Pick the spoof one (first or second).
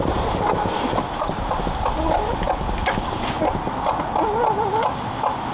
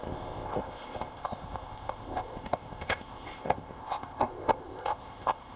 second